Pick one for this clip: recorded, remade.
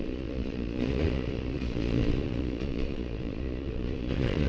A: remade